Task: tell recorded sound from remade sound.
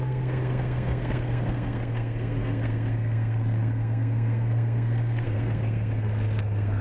remade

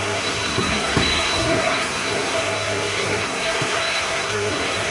remade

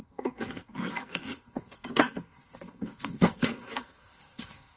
remade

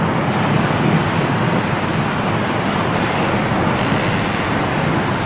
recorded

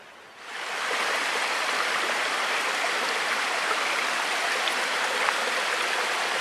recorded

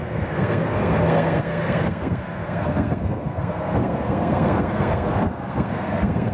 remade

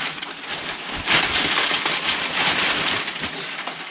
recorded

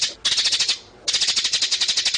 recorded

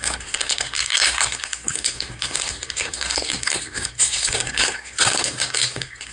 remade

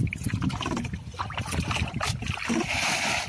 recorded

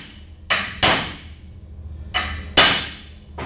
recorded